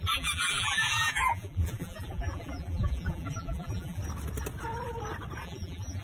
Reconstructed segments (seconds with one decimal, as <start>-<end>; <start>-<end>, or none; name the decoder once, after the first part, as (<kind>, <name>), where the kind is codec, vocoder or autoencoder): 0.0-4.0 (vocoder, BigVGAN v2); 5.4-6.0